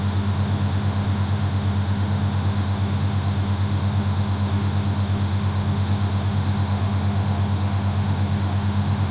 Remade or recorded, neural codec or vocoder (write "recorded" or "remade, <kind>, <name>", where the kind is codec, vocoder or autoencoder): remade, autoencoder, DAC-VAE